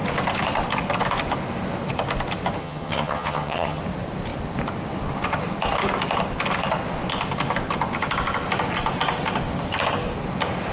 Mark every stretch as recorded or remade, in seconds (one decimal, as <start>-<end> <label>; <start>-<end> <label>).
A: 0.0-2.6 recorded; 2.6-3.8 remade; 3.8-10.7 recorded